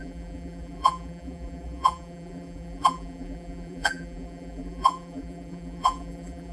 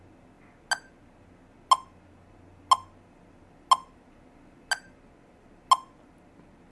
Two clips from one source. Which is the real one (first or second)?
second